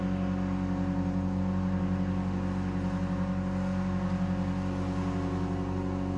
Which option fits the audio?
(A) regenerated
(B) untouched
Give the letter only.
B